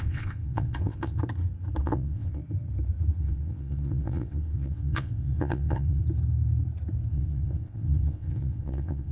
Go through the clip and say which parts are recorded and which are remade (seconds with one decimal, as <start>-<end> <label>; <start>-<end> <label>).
0.0-1.2 remade; 1.2-1.8 recorded; 1.8-2.4 remade; 2.4-3.2 recorded; 3.2-6.0 remade; 6.0-7.1 recorded; 7.1-9.1 remade